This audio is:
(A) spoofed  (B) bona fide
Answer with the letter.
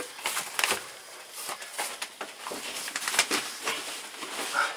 B